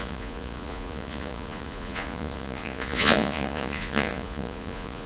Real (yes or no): no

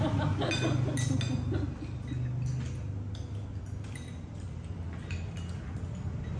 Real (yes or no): yes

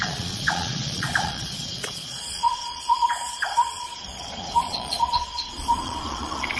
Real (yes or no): no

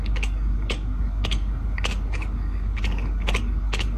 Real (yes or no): no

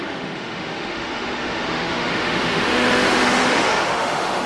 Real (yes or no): no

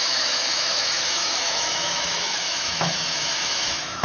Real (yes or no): no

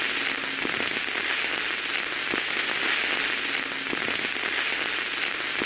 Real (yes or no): yes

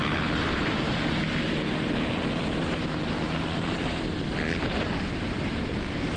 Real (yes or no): yes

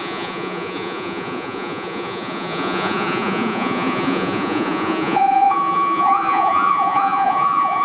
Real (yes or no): no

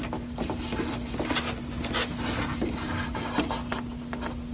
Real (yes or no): yes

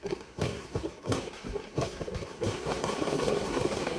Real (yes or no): no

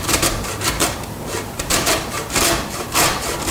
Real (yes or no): no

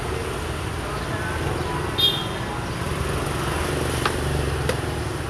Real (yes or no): yes